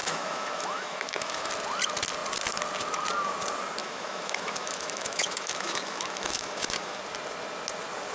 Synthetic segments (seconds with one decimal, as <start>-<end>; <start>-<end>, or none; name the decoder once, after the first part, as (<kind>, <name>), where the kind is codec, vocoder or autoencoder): 0.0-1.5 (autoencoder, DAC-VAE); 3.8-7.0

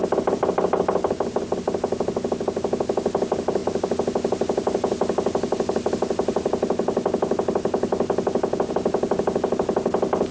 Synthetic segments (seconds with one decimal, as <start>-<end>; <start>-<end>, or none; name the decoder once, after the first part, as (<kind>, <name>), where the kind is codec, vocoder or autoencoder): none